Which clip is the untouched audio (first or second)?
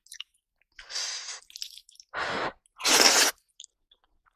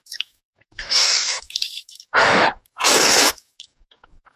first